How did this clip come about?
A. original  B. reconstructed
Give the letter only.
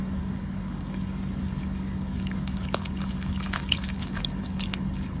B